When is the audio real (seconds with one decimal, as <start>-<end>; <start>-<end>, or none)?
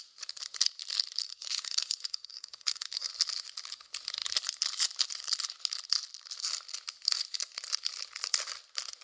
0.0-1.2; 3.1-9.0